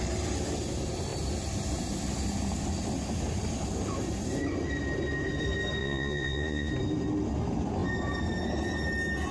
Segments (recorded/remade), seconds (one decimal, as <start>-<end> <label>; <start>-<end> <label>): 0.0-5.8 recorded; 5.8-6.7 remade; 6.7-9.3 recorded